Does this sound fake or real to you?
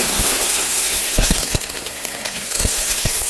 fake